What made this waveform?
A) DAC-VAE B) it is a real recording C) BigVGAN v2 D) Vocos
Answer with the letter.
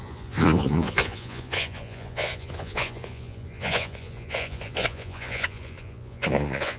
D